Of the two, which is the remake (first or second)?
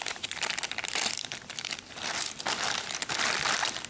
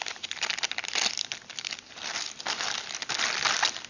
first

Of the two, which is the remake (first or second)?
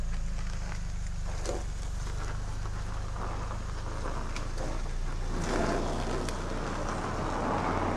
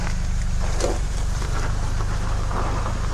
second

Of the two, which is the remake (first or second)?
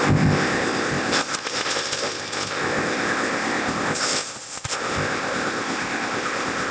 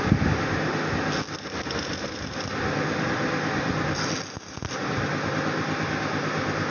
first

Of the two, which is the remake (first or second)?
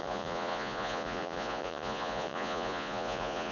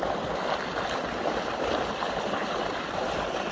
first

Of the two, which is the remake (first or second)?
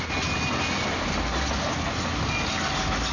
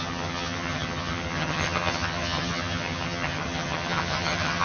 second